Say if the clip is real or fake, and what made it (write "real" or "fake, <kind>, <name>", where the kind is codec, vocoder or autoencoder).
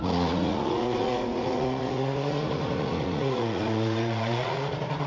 fake, vocoder, Vocos